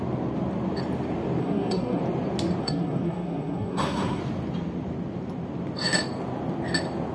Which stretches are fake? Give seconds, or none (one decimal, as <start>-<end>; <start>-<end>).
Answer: 1.4-2.0; 2.6-4.2